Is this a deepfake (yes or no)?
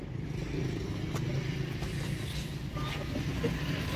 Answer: no